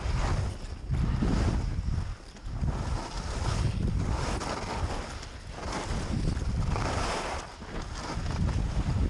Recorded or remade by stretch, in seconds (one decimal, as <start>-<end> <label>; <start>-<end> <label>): 0.0-9.1 recorded